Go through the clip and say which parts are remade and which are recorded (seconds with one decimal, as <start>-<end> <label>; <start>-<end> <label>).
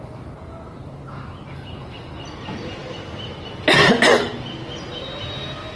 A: 0.0-5.8 recorded